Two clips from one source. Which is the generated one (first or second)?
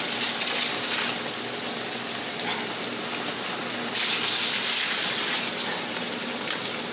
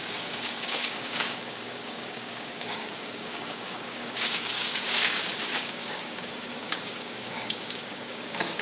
second